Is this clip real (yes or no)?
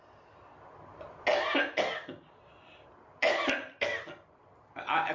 yes